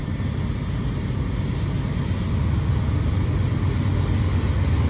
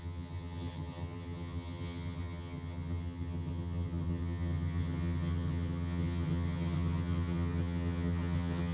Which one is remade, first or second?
second